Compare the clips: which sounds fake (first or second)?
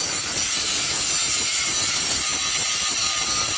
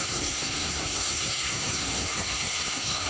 second